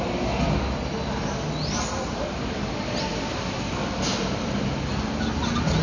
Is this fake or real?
real